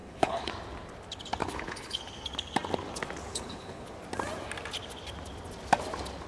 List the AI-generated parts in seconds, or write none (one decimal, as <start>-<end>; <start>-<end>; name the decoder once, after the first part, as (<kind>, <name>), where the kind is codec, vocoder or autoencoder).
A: 0.0-0.5 (codec, HILCodec); 1.4-2.0; 3.3-3.9